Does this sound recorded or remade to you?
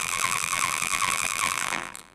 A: remade